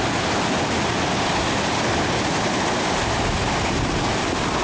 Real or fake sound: real